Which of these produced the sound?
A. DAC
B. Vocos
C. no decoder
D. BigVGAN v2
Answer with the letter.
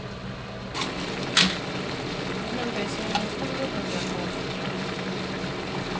C